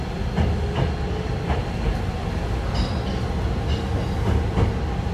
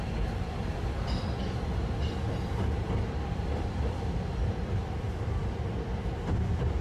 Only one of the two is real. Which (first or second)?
first